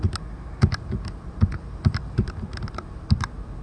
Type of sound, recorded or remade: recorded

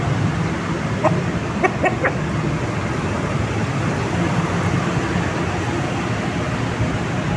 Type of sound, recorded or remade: recorded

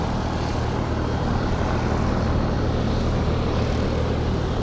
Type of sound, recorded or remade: recorded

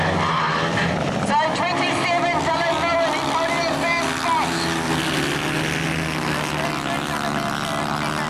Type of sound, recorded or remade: recorded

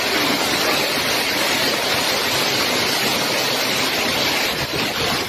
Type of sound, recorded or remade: recorded